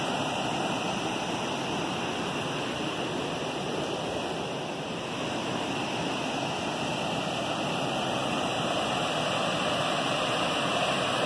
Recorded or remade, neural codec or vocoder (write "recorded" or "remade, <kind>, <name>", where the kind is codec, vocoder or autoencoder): recorded